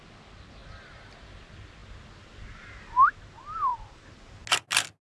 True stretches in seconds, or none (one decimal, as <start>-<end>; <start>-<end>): 0.0-0.6; 1.4-5.0